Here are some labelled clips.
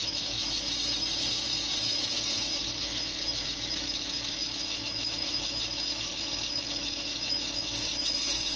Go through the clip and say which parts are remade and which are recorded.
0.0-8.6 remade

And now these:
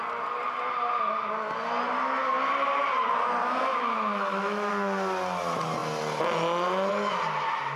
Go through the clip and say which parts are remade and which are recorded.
0.0-3.4 recorded; 3.4-4.7 remade; 4.7-7.8 recorded

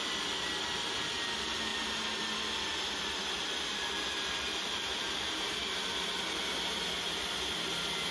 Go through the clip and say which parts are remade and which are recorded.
0.0-8.1 recorded

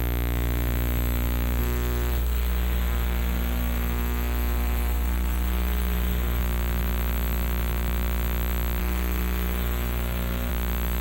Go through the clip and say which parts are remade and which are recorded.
0.0-1.6 recorded; 1.6-6.4 remade; 6.4-8.8 recorded; 8.8-10.5 remade; 10.5-11.0 recorded

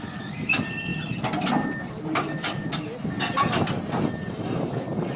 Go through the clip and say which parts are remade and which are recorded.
0.0-5.2 recorded

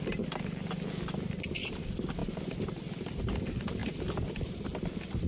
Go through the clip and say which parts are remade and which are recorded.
0.0-5.3 recorded

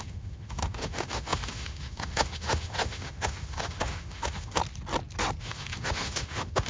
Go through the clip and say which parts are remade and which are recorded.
0.0-4.6 remade; 4.6-5.4 recorded; 5.4-6.7 remade

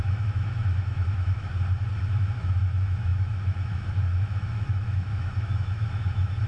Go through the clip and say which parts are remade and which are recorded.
0.0-1.5 remade; 1.5-2.0 recorded; 2.0-6.5 remade